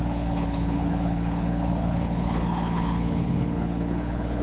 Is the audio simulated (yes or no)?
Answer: yes